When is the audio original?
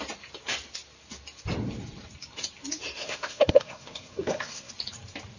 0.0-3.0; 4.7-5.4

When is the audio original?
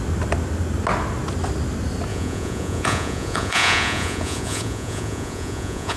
0.0-2.1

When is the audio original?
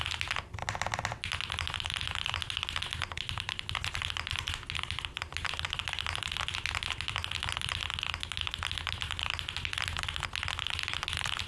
0.0-11.5